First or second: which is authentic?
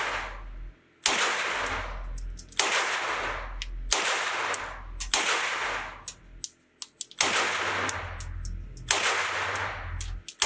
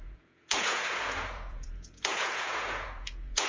first